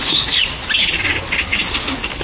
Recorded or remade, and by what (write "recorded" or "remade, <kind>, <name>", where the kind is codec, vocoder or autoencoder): recorded